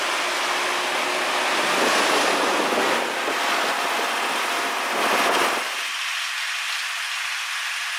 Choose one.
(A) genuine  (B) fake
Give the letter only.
A